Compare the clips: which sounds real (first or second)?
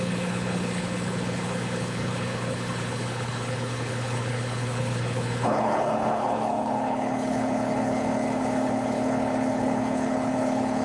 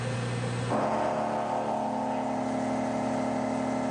second